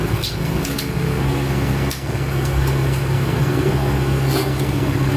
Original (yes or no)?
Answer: no